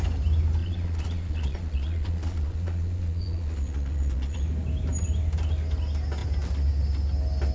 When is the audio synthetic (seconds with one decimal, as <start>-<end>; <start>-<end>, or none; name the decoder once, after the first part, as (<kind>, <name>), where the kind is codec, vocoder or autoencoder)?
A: 0.6-4.4 (vocoder, Vocos)